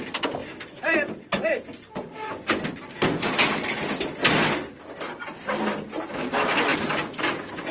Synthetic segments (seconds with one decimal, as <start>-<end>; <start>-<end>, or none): none